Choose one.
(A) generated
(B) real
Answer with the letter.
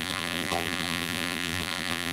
A